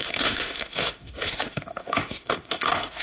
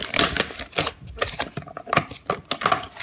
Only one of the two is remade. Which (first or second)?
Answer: first